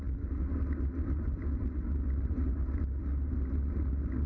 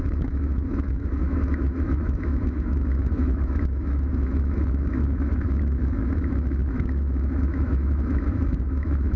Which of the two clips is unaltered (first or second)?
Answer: first